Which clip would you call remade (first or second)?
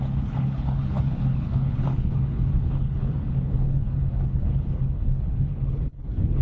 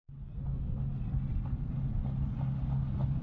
first